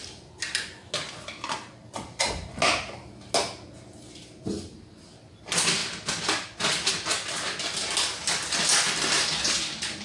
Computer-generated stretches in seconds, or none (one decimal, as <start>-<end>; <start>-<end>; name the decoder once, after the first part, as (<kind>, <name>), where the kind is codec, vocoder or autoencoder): none